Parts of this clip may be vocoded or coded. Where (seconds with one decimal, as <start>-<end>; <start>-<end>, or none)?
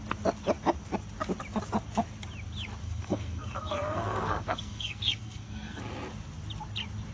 2.8-5.8